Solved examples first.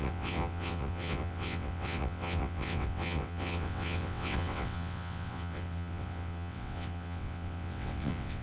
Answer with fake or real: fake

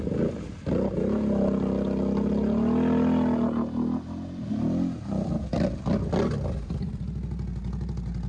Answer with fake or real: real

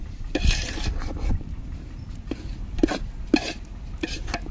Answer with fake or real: real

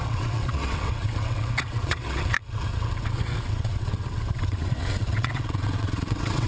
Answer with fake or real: fake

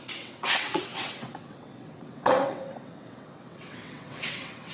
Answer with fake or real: fake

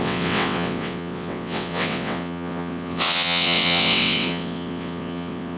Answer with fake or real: fake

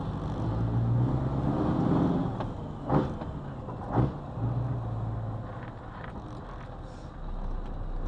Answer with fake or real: real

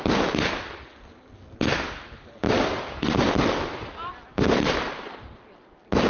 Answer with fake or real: real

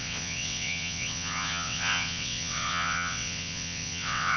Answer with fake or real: fake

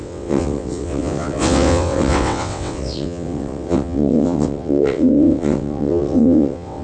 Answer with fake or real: fake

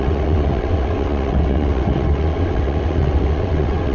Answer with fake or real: fake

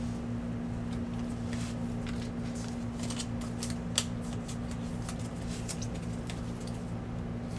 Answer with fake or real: real